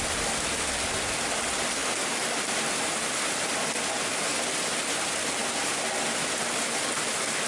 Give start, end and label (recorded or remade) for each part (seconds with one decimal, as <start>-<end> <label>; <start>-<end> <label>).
0.0-7.5 recorded